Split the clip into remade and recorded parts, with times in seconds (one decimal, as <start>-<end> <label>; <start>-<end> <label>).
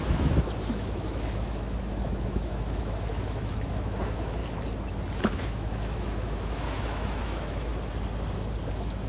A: 0.0-4.4 remade; 4.4-5.3 recorded; 5.3-7.7 remade; 7.7-8.7 recorded; 8.7-9.1 remade